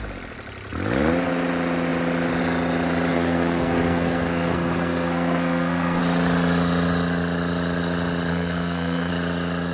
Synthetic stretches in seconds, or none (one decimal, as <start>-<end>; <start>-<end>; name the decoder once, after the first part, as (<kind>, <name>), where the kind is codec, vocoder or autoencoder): 3.1-6.0 (codec, SNAC); 8.3-9.1